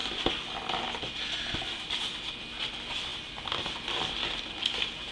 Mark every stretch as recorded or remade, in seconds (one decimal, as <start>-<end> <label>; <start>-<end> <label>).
0.0-5.1 recorded